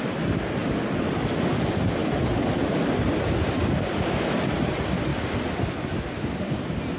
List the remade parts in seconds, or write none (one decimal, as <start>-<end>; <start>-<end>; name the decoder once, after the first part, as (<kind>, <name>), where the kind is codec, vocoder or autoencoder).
none